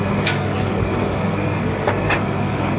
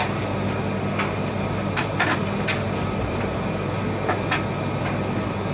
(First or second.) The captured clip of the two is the second